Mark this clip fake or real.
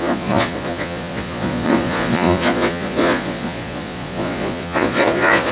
fake